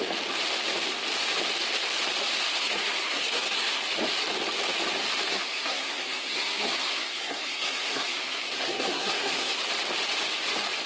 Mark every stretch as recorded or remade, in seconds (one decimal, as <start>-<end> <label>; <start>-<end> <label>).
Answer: 0.0-2.6 recorded; 2.6-3.8 remade; 3.8-5.3 recorded; 5.3-9.6 remade; 9.6-10.9 recorded